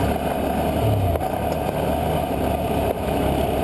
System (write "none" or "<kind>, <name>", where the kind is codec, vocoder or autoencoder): none